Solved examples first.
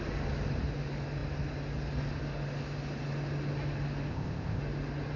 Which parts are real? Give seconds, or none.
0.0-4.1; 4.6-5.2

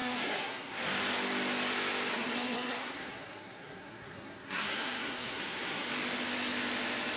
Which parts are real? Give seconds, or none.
0.8-2.1; 5.9-7.2

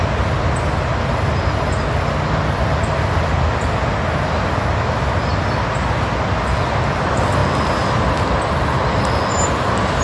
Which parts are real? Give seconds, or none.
0.0-10.0

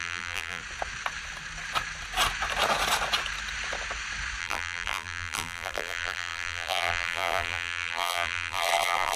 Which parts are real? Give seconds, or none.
0.6-4.4